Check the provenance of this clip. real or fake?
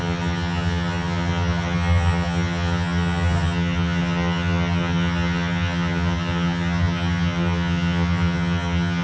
fake